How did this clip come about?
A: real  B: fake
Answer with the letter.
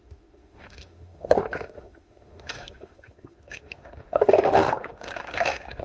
B